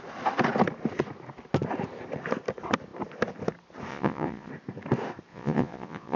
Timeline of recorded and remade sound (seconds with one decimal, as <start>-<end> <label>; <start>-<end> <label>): 0.0-3.9 recorded; 3.9-4.5 remade; 4.5-5.3 recorded; 5.3-6.2 remade